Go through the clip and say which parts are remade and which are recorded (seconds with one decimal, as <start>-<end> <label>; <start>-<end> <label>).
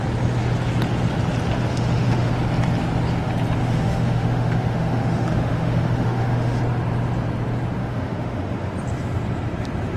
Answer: 0.0-1.7 recorded; 1.7-2.3 remade; 2.3-3.6 recorded; 3.6-6.6 remade; 6.6-7.8 recorded; 7.8-8.7 remade; 8.7-10.0 recorded